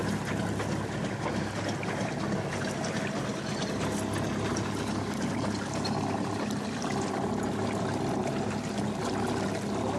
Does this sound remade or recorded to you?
recorded